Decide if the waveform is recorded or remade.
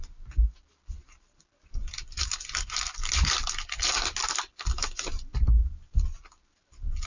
recorded